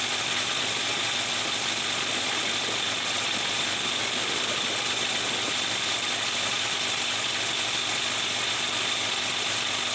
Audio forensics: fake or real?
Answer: real